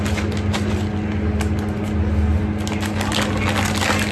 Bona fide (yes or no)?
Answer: yes